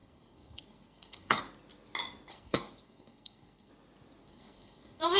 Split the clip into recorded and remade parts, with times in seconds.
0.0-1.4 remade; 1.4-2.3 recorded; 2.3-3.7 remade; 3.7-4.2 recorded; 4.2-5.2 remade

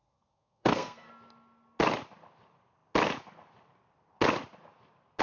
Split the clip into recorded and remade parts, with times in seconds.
0.0-1.1 remade; 1.1-5.2 recorded

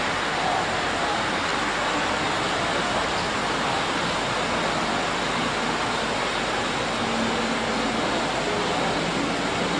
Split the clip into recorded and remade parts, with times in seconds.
0.0-9.8 recorded

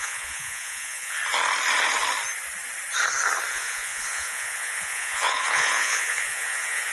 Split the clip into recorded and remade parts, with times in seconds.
0.0-1.2 remade; 1.2-3.5 recorded; 3.5-6.9 remade

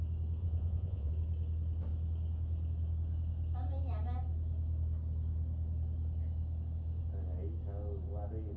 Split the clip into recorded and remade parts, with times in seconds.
0.0-0.4 recorded; 0.4-1.1 remade; 1.1-8.6 recorded

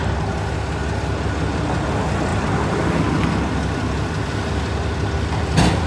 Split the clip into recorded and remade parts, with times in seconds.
0.0-5.9 recorded

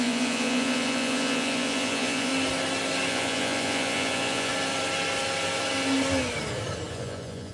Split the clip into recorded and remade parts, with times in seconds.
0.0-2.3 remade; 2.3-3.1 recorded; 3.1-4.5 remade; 4.5-6.9 recorded; 6.9-7.5 remade

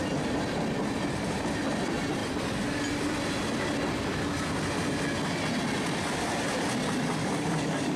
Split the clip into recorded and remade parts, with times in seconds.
0.0-7.2 recorded; 7.2-8.0 remade